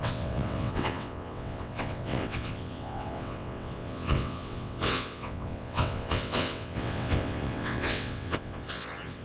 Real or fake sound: fake